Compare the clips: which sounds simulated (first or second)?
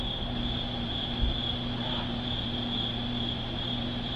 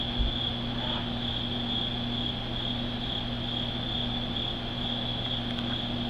first